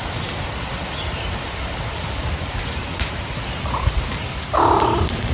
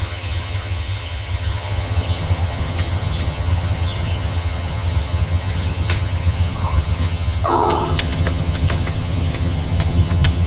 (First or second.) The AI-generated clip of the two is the second